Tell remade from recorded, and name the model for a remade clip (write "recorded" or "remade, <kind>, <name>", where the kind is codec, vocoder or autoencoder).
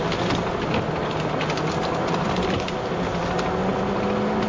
recorded